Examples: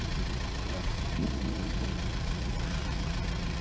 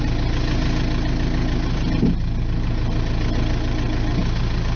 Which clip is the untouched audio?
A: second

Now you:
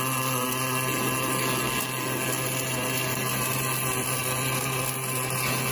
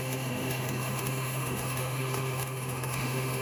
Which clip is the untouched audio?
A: first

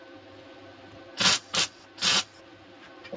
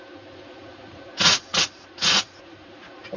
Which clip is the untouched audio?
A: first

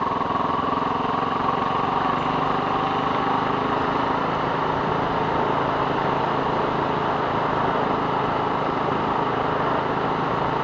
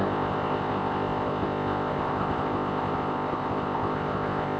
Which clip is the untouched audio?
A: first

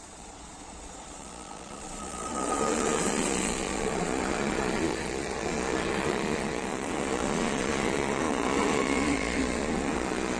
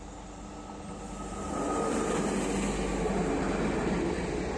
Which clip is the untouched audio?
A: second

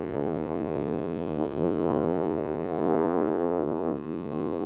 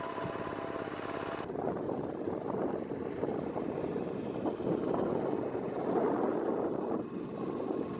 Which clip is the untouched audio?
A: second